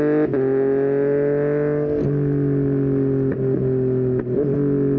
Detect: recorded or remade recorded